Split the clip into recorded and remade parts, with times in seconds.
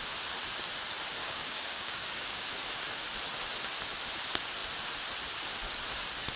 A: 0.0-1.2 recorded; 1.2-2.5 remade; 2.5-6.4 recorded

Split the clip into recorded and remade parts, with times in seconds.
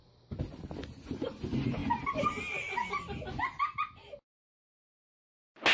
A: 0.0-5.7 recorded